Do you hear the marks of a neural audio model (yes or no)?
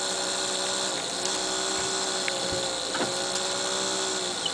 no